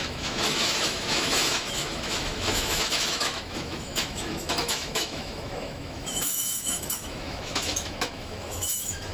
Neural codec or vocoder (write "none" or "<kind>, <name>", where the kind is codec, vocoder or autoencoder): autoencoder, DAC-VAE